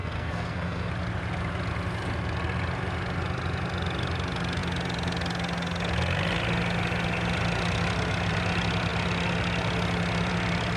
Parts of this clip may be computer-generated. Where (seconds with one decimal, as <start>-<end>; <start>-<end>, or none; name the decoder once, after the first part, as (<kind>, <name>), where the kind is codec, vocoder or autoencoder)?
0.0-0.9 (codec, SNAC)